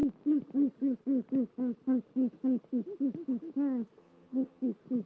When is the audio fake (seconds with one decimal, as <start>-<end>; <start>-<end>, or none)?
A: 4.0-4.6